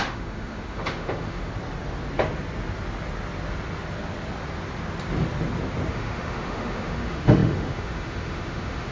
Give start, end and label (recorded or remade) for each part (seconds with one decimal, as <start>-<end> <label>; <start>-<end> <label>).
0.0-1.5 remade; 1.5-5.9 recorded; 5.9-8.9 remade

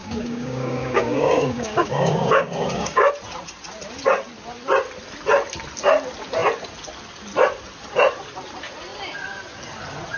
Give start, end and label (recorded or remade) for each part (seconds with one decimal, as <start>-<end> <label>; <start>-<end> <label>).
0.0-3.1 remade; 3.1-10.2 recorded

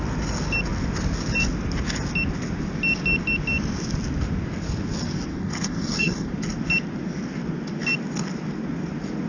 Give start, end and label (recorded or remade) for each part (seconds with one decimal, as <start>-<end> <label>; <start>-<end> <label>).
0.0-5.3 recorded; 5.3-6.3 remade; 6.3-9.3 recorded

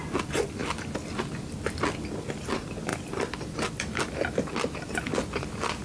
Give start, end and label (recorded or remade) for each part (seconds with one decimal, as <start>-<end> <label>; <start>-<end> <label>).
0.0-5.8 recorded

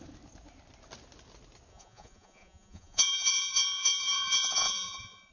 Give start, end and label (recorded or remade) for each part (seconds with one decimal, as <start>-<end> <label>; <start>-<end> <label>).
0.0-1.7 recorded; 1.7-5.3 remade

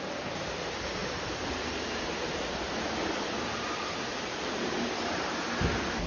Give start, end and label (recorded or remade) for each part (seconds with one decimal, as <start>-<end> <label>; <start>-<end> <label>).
0.0-1.0 recorded; 1.0-2.7 remade; 2.7-4.1 recorded; 4.1-5.6 remade; 5.6-6.1 recorded

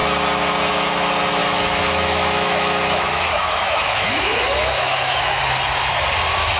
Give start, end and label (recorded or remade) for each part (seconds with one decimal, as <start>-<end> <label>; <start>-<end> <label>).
0.0-1.4 recorded; 1.4-5.4 remade; 5.4-6.6 recorded